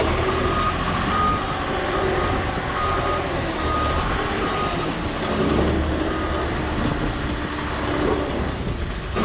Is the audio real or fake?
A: real